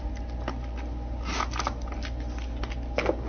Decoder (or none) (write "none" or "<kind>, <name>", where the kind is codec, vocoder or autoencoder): none